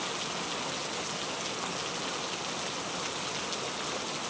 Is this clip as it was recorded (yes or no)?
yes